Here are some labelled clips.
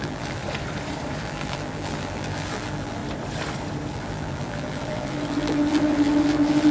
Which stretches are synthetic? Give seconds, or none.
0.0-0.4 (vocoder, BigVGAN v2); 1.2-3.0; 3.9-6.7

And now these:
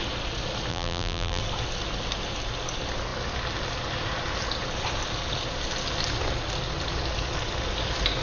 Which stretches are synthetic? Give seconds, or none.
0.7-1.4 (vocoder, BigVGAN v2)

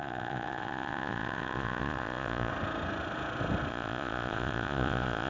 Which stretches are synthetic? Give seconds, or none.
0.0-2.5 (vocoder, Vocos); 3.7-5.3

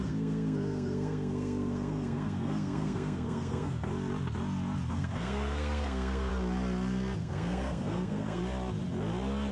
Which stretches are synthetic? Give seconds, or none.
0.0-3.9 (codec, SNAC); 4.9-6.3; 7.2-8.4

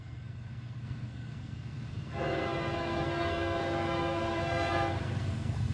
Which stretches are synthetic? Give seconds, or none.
0.0-5.7 (codec, SNAC)

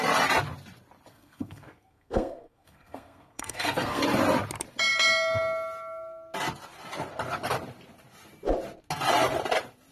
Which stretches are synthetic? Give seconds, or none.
1.1-4.0 (codec, SNAC)

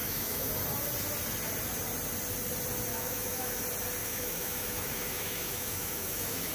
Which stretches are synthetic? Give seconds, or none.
0.0-0.5 (autoencoder, DAC-VAE); 2.9-3.6; 4.0-6.5

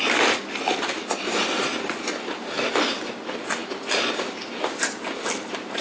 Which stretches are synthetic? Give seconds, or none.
none